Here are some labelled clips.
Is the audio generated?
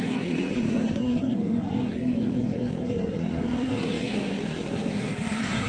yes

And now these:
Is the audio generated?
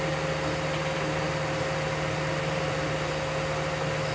no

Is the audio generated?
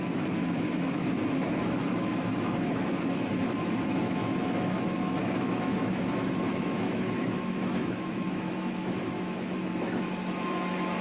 yes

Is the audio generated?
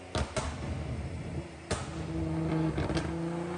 no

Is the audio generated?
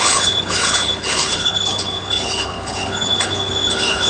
yes